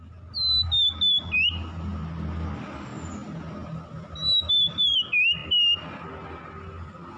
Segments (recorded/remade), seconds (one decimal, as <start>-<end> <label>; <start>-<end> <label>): 0.0-7.2 recorded